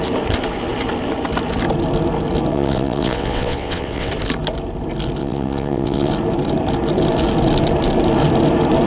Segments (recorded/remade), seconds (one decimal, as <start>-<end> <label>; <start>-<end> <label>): 0.0-2.5 recorded; 2.5-4.1 remade; 4.1-5.2 recorded; 5.2-6.1 remade; 6.1-8.9 recorded